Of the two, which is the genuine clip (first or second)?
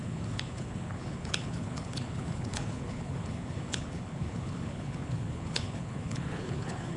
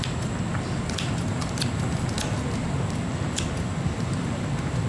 second